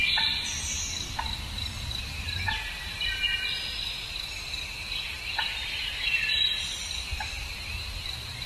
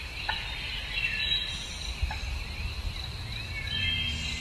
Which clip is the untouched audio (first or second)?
second